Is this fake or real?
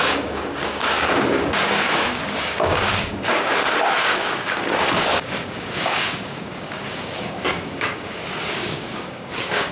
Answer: fake